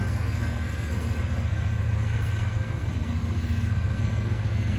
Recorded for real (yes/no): no